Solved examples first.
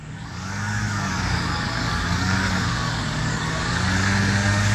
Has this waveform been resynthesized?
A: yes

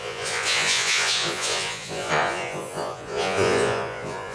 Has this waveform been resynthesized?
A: yes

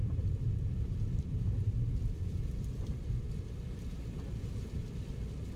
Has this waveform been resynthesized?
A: yes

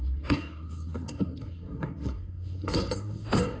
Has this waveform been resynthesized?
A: yes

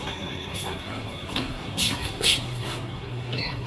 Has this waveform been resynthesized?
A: yes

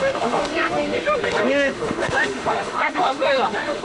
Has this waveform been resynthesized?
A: yes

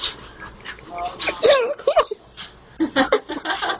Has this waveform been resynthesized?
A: no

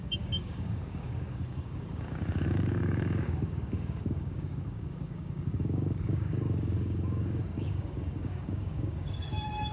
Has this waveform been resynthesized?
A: yes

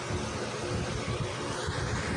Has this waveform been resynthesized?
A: no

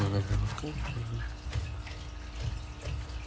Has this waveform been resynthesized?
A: no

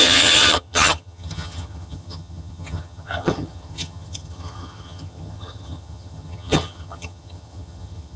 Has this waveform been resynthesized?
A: yes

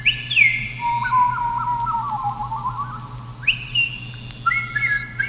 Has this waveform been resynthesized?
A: no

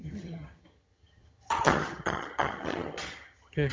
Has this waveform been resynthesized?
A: yes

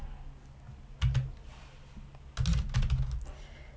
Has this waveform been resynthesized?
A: no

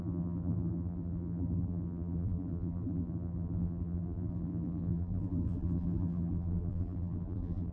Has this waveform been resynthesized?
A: yes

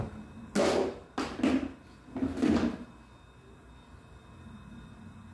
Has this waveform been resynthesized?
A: no